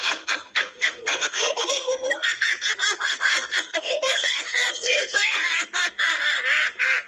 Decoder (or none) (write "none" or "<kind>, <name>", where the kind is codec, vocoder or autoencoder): codec, SNAC